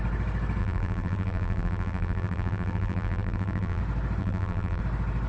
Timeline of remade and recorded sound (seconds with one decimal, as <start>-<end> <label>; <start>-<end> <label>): 0.0-0.6 recorded; 0.6-3.8 remade; 3.8-4.2 recorded; 4.2-4.8 remade; 4.8-5.3 recorded